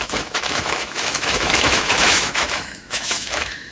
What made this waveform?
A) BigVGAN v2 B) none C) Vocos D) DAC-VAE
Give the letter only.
D